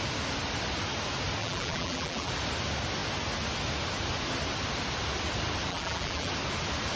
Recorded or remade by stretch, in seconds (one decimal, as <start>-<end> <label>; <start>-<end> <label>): 0.0-1.4 recorded; 1.4-2.3 remade; 2.3-5.7 recorded; 5.7-6.3 remade; 6.3-7.0 recorded